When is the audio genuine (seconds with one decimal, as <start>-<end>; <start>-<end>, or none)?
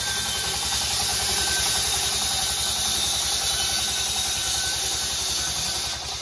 0.0-1.1; 2.5-4.4; 5.2-6.2